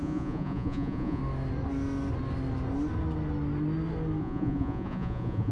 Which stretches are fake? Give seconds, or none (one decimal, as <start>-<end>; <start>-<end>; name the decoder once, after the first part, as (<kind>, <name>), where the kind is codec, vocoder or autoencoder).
0.0-1.2 (vocoder, Vocos); 4.2-5.5